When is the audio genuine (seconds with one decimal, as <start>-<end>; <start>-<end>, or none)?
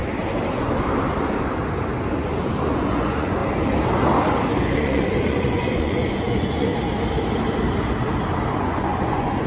0.0-2.2; 3.4-4.6; 6.7-8.6